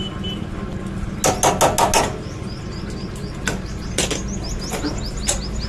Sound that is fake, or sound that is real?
real